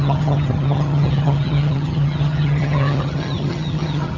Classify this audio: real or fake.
fake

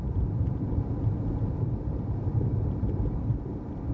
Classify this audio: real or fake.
fake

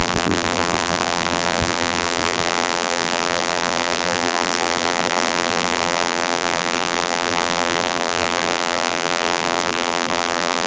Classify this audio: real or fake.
fake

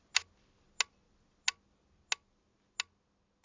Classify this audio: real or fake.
real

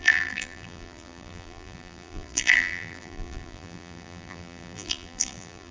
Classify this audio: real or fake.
fake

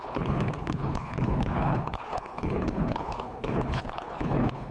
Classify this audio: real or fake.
fake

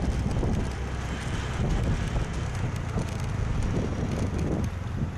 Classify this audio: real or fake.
real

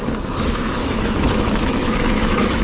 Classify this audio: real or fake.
fake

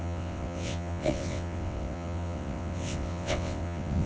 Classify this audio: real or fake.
fake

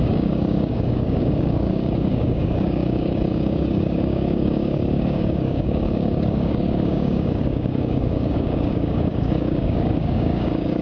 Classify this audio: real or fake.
fake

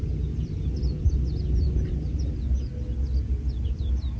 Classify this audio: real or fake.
real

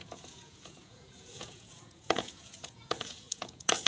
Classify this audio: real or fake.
fake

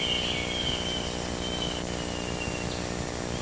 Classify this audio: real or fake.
real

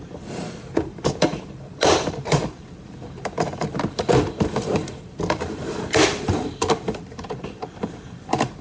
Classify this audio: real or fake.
fake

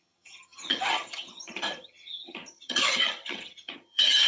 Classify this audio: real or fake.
fake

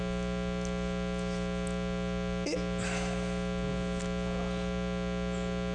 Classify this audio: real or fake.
real